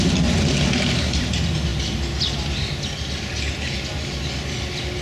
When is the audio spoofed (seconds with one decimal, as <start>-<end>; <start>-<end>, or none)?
none